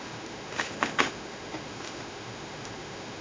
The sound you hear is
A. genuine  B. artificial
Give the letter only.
B